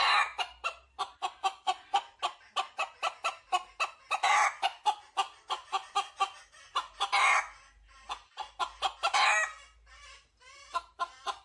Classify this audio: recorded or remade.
recorded